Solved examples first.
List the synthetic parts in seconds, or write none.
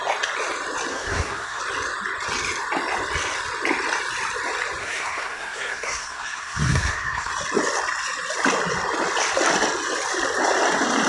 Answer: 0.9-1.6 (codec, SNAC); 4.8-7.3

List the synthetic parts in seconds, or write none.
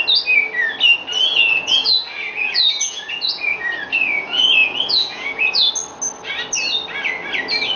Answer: 1.3-5.7 (vocoder, Vocos)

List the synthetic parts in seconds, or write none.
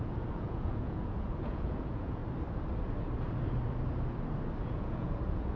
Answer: 0.0-2.2 (vocoder, Vocos); 4.6-5.6